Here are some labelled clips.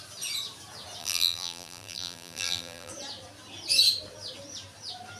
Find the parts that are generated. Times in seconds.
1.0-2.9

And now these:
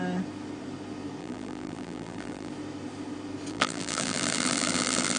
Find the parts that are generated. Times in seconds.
1.2-2.5; 3.5-5.2

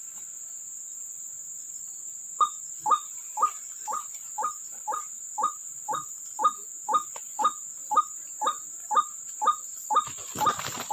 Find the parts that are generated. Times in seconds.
1.2-1.8; 7.8-9.8